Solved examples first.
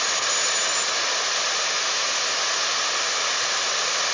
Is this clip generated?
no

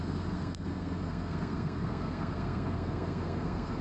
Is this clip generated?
yes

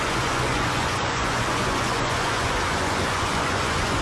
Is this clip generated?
yes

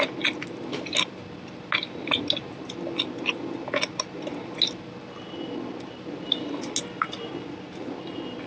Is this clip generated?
no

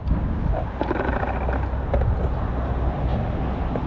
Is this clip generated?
no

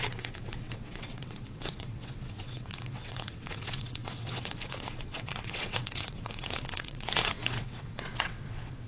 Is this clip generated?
yes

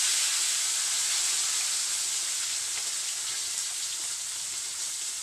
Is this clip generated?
no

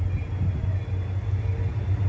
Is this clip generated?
no